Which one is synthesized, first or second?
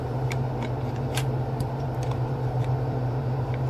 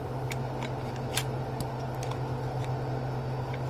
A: first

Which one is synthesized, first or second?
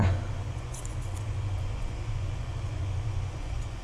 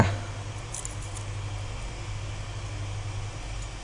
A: first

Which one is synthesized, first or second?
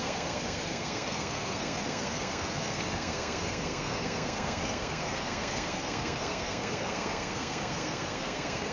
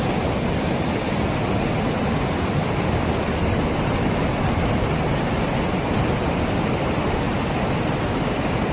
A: first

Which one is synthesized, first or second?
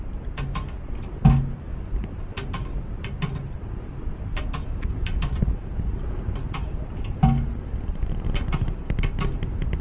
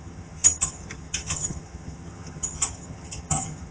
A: second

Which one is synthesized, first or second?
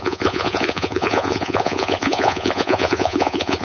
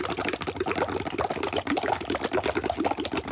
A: first